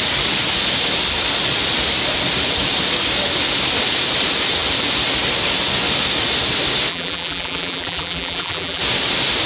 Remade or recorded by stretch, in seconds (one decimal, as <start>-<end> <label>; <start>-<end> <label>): 0.0-6.9 recorded; 6.9-8.8 remade; 8.8-9.5 recorded